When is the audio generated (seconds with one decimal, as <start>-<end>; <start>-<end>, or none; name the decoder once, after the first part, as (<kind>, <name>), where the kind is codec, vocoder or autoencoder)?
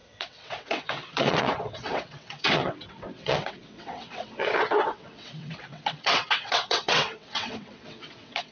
0.0-8.5 (vocoder, WaveNeXt)